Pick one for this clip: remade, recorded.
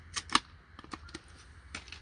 recorded